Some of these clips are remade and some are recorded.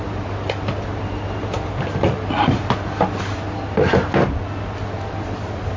recorded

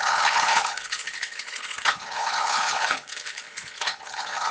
remade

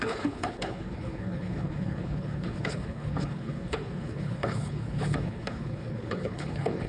remade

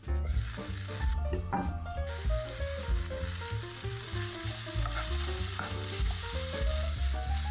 recorded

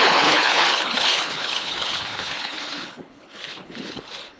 remade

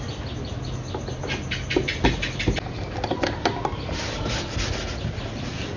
recorded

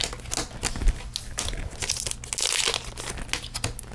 recorded